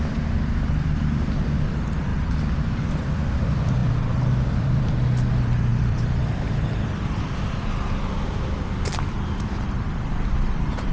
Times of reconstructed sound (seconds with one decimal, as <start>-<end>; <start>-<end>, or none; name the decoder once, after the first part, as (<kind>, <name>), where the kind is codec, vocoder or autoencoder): 0.0-2.1 (vocoder, BigVGAN v2); 2.8-10.9